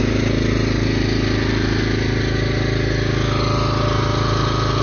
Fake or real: real